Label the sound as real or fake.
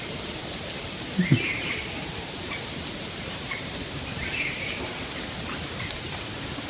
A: fake